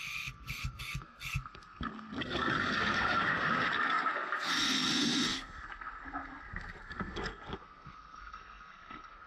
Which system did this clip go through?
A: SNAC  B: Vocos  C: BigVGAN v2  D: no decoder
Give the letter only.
A